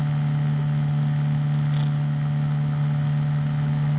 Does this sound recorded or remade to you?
recorded